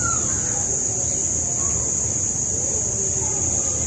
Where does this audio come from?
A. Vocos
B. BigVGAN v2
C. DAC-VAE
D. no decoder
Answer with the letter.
D